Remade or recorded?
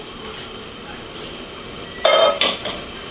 recorded